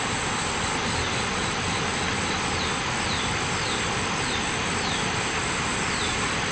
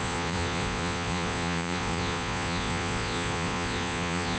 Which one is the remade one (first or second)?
second